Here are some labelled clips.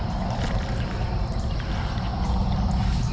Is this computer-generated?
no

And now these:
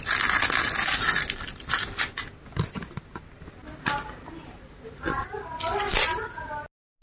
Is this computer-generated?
no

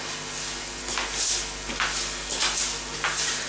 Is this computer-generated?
no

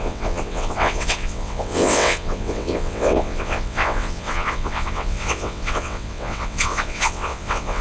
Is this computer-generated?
yes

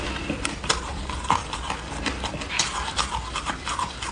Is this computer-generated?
no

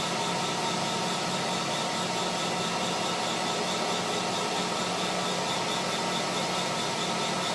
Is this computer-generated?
no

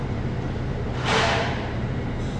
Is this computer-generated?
yes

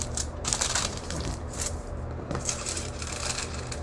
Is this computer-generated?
yes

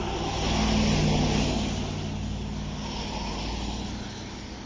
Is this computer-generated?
no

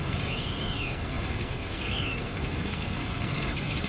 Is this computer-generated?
yes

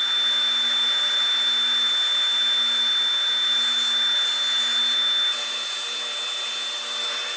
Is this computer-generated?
no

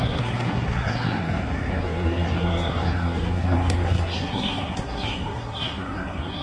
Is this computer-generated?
yes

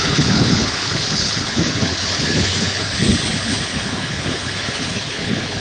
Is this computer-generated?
yes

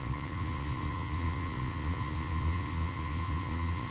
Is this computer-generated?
yes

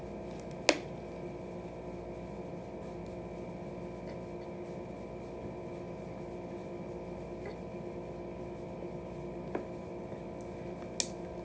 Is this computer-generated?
no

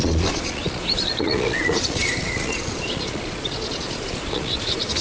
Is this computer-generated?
yes